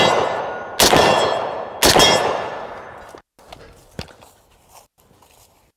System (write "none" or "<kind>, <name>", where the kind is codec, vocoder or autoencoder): none